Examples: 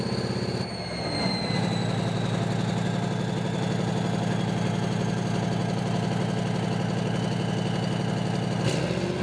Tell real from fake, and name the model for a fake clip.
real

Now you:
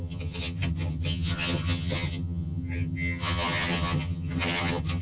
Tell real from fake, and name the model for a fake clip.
fake, vocoder, HiFi-GAN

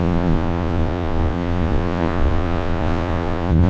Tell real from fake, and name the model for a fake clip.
fake, vocoder, Vocos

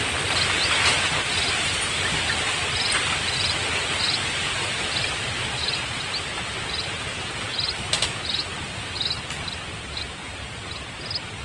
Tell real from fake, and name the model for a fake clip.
real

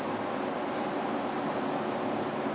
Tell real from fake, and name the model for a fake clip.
real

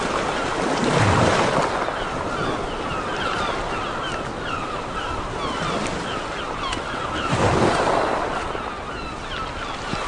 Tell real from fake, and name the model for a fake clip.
real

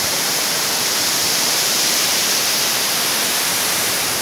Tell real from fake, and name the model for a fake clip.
fake, vocoder, BigVGAN v2